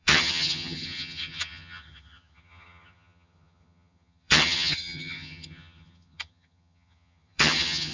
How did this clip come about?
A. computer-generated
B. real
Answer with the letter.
A